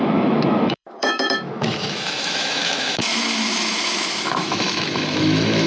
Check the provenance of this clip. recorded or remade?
remade